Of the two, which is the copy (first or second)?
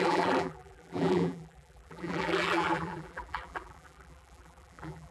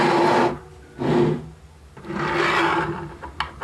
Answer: first